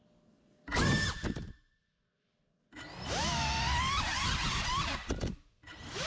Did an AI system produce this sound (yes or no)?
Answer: no